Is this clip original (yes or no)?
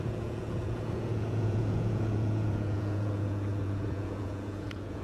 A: no